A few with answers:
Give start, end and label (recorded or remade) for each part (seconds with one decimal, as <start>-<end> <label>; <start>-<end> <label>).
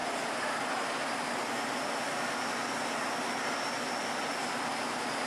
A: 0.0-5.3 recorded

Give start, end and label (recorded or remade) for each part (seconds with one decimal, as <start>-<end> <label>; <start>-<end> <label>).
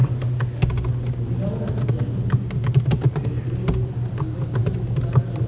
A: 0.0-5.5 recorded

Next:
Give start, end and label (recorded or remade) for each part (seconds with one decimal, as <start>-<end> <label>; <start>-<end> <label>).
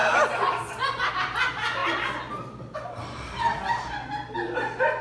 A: 0.0-1.1 recorded; 1.1-1.8 remade; 1.8-5.0 recorded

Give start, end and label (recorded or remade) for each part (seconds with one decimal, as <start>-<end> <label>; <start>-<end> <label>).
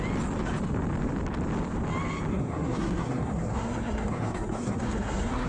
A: 0.0-2.3 recorded; 2.3-5.5 remade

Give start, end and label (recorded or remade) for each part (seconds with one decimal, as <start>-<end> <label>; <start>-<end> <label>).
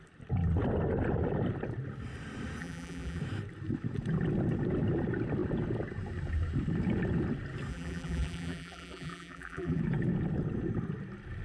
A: 0.0-2.6 recorded; 2.6-3.2 remade; 3.2-7.7 recorded; 7.7-9.8 remade; 9.8-11.4 recorded